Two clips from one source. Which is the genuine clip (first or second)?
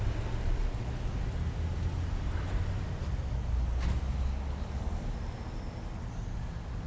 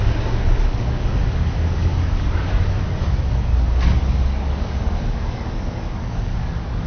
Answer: first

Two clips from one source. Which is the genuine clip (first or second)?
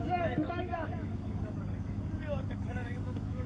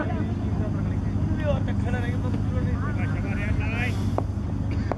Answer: second